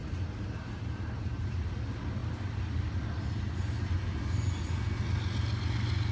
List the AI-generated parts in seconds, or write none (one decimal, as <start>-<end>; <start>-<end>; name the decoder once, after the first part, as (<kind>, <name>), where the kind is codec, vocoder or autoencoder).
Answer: 0.0-1.7 (vocoder, BigVGAN v2)